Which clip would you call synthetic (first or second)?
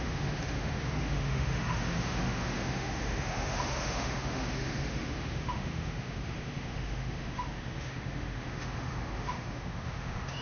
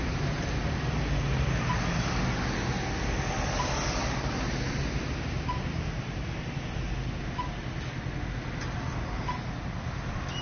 first